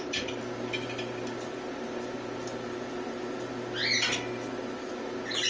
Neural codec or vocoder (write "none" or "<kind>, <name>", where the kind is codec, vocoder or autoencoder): none